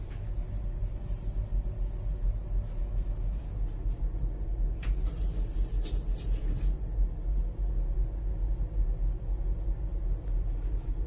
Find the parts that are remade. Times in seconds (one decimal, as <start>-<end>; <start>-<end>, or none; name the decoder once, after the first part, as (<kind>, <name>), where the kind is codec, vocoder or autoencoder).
2.8-3.4 (autoencoder, DAC-VAE)